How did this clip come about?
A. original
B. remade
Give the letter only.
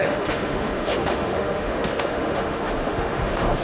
B